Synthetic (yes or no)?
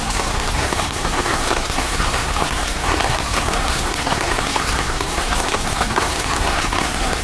yes